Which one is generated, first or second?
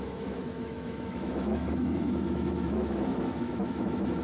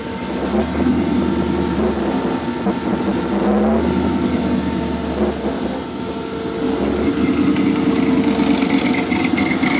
first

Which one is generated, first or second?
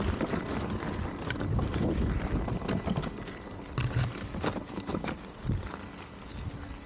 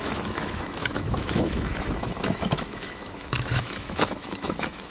second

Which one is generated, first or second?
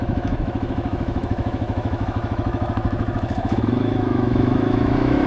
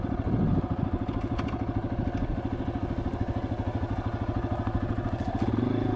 first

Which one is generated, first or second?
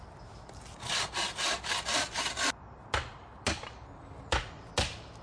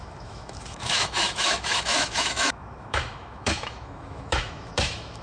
second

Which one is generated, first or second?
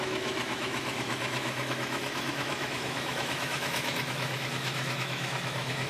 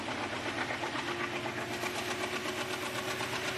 first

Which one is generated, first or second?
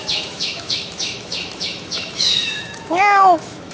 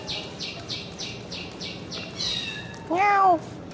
first